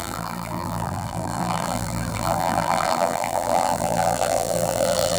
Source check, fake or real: fake